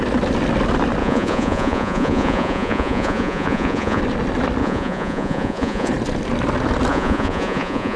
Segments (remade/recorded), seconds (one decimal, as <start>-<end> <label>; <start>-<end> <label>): 0.0-1.0 recorded; 1.0-4.0 remade; 4.0-4.6 recorded; 4.6-5.9 remade; 5.9-6.9 recorded; 6.9-8.0 remade